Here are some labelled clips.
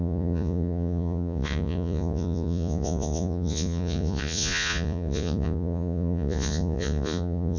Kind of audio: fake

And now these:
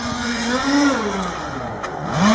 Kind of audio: fake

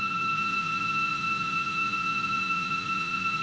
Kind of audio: fake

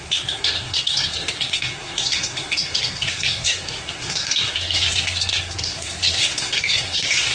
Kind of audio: fake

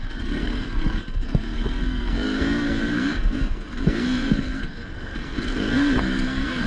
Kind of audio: fake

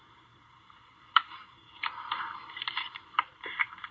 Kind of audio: fake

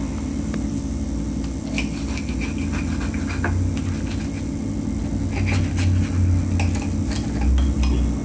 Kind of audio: real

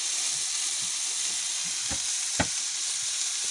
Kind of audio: real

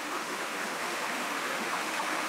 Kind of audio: fake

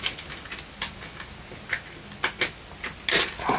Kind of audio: real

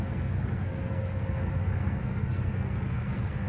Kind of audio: fake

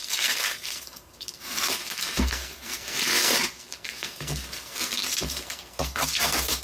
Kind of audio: fake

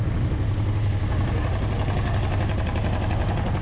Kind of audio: real